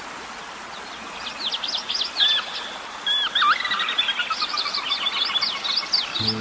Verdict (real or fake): real